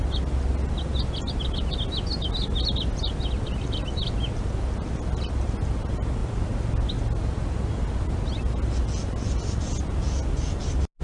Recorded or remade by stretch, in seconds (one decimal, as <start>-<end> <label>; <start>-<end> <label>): 0.0-11.0 recorded